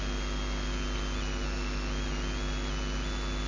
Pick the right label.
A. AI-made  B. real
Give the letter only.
B